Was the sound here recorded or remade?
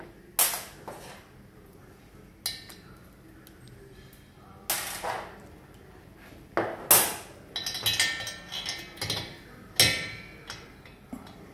recorded